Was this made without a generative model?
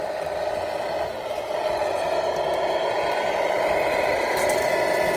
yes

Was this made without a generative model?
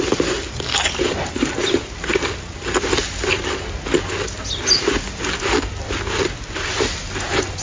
yes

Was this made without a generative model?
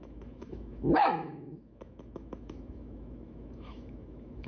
no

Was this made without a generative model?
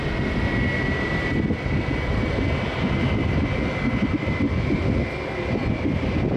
yes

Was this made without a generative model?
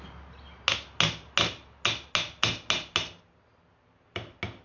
yes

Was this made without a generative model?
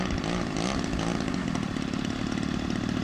yes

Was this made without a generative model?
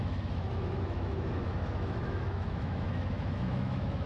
no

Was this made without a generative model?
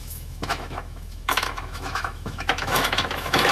no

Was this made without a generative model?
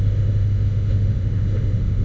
no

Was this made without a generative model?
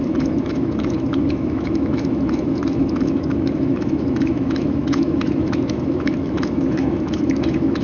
no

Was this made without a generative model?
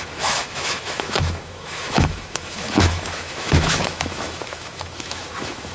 no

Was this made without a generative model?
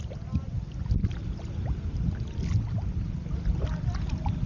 yes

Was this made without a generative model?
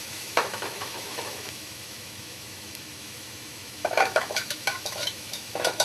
no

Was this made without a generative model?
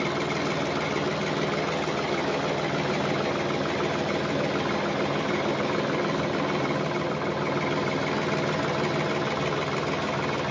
yes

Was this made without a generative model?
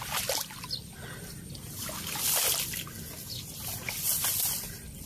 yes